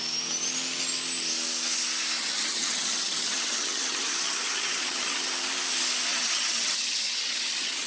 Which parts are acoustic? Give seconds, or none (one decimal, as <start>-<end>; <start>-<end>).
0.0-2.2; 5.3-6.1